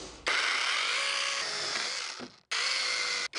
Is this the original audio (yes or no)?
yes